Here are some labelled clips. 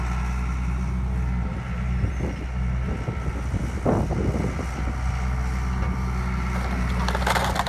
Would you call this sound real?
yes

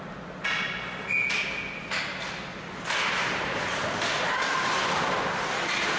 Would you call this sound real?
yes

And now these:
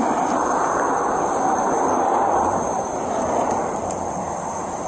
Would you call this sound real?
no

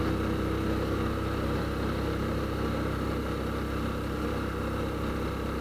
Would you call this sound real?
yes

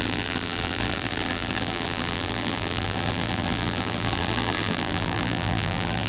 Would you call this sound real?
no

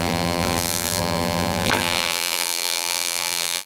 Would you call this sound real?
no